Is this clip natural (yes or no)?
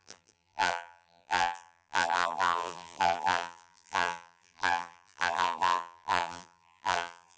no